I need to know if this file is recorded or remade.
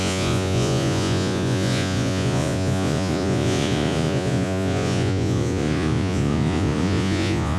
remade